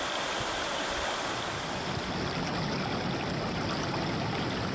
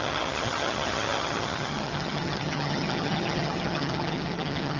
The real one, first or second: first